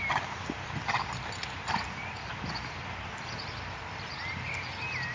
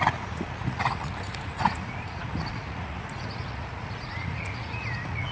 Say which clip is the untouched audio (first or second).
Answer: first